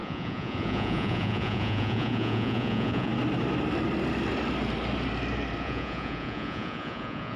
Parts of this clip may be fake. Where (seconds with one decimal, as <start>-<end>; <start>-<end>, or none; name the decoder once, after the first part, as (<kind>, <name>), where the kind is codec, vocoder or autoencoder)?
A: 0.0-3.1 (vocoder, Vocos); 5.6-7.4